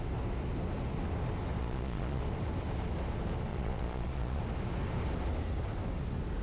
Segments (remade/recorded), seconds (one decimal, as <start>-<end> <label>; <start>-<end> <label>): 0.0-1.6 recorded; 1.6-2.2 remade; 2.2-3.5 recorded; 3.5-4.4 remade; 4.4-6.4 recorded